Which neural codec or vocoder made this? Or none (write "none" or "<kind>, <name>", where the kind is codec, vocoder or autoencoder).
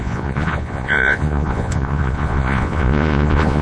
vocoder, Vocos